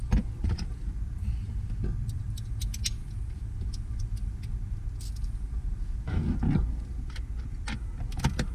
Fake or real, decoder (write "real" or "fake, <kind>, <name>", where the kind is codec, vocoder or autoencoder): real